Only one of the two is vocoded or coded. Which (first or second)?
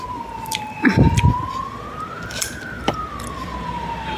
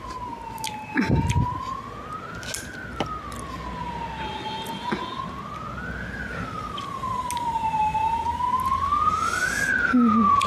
first